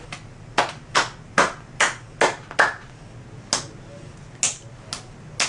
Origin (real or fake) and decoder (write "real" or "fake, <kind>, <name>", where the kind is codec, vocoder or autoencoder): real